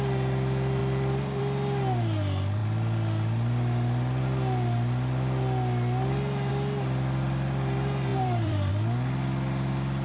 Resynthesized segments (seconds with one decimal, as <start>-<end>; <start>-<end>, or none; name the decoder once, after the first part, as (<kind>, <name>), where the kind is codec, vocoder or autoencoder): 0.8-1.4 (vocoder, BigVGAN v2); 8.1-8.7